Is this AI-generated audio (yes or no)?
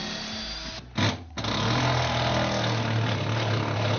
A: no